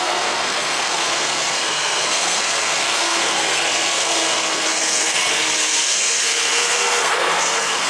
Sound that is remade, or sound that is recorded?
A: remade